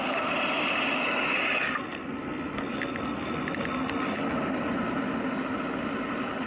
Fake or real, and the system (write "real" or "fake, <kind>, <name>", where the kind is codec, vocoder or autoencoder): real